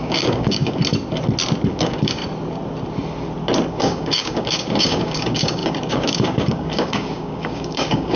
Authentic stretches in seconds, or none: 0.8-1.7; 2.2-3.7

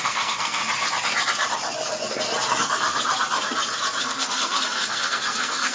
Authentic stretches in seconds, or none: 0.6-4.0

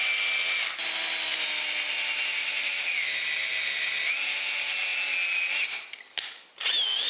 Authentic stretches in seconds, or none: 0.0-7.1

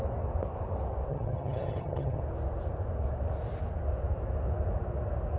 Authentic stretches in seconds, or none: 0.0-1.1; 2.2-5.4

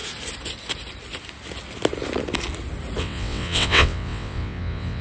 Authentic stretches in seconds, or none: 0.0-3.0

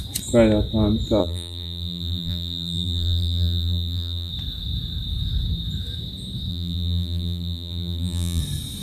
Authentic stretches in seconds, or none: 0.0-1.2; 4.3-6.5; 8.4-8.8

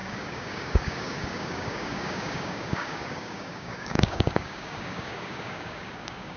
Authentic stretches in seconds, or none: none

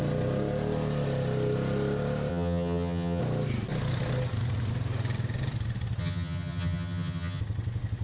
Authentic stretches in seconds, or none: 0.0-2.3; 3.2-6.0; 7.4-8.0